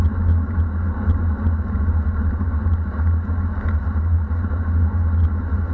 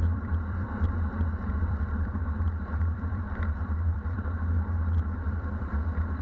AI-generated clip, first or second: second